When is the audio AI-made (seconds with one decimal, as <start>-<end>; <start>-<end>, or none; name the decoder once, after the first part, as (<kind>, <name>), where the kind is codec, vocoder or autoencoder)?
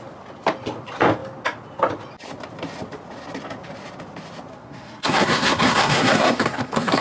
4.5-7.0 (codec, SNAC)